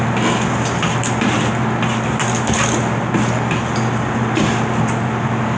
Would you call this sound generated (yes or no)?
no